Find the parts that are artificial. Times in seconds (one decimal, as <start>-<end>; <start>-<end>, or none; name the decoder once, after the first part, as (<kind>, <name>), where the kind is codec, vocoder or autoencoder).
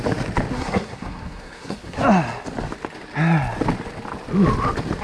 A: 0.5-2.0 (codec, SNAC)